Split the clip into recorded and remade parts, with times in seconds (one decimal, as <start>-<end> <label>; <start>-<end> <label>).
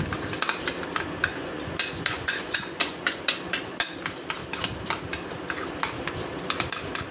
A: 0.0-1.3 recorded; 1.3-3.2 remade; 3.2-7.1 recorded